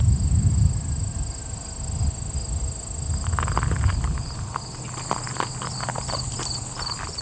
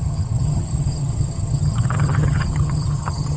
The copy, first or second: second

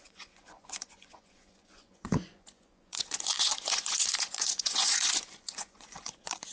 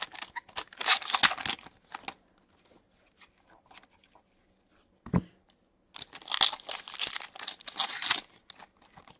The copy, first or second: first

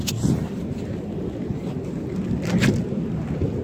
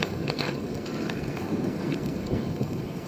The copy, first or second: second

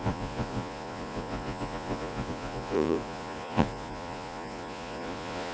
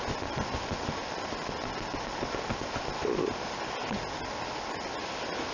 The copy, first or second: first